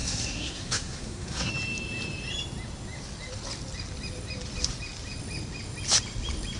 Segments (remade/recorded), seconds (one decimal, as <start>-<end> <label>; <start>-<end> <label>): 0.0-1.5 remade; 1.5-6.6 recorded